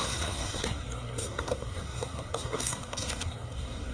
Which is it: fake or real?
fake